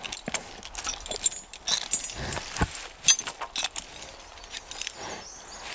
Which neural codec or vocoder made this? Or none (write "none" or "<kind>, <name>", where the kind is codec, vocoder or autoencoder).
none